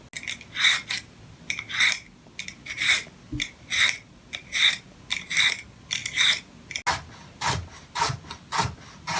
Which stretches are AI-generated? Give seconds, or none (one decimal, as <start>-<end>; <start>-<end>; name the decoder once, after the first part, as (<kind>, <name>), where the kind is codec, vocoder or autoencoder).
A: none

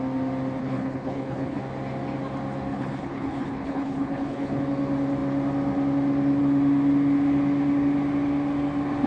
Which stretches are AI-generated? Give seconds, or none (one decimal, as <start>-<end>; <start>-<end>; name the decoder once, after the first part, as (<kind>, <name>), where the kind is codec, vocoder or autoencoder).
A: 0.6-1.6 (codec, HILCodec); 2.7-4.6

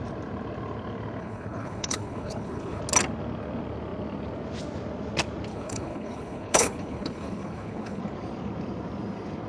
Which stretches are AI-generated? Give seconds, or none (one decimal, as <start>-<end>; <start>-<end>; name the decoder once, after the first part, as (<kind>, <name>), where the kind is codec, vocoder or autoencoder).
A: 1.2-2.8 (codec, HILCodec); 5.5-8.0

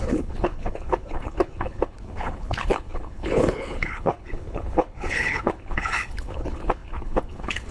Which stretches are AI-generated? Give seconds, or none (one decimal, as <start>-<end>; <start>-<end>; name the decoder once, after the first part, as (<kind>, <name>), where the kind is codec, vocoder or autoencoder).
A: 0.0-7.7 (codec, HILCodec)

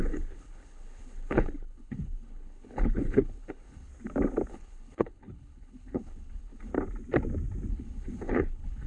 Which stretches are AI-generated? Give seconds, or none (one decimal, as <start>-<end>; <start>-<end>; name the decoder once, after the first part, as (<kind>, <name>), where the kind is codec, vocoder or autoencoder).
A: 0.0-3.9 (codec, HILCodec); 4.5-6.7; 7.7-8.9

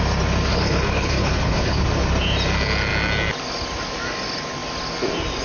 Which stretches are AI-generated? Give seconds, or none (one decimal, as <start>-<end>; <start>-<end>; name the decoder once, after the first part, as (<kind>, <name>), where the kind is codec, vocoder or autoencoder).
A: 0.5-1.8 (codec, HILCodec)